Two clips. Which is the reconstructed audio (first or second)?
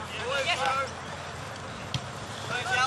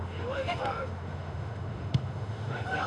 second